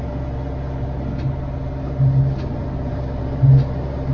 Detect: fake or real real